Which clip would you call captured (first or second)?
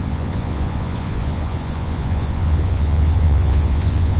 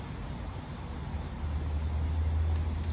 second